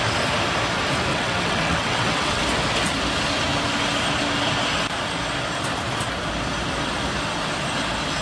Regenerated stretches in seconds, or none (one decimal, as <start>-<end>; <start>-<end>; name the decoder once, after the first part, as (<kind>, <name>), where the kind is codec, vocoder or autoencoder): 1.1-2.4 (vocoder, WaveNeXt)